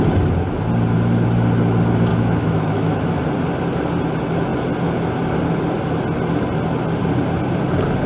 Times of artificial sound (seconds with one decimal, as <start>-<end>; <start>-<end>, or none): 2.1-3.2